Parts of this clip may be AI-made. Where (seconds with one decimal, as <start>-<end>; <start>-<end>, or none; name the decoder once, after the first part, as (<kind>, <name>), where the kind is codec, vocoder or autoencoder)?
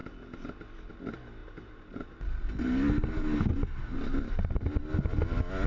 1.4-2.6 (vocoder, BigVGAN v2)